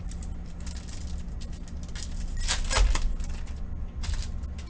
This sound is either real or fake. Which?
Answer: real